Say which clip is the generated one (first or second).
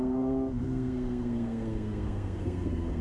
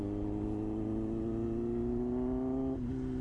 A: first